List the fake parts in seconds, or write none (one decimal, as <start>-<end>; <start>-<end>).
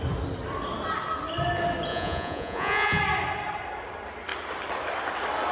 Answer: 1.9-3.0